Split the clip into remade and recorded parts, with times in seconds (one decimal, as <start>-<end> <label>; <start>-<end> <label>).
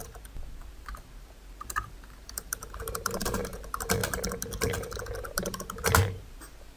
0.0-4.0 remade; 4.0-5.3 recorded; 5.3-6.8 remade